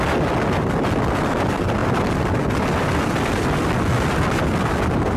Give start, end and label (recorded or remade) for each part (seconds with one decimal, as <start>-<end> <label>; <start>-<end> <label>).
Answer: 0.0-5.2 recorded